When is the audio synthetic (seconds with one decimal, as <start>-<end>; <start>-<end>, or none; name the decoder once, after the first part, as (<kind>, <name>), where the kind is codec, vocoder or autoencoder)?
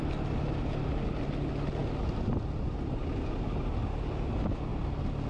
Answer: none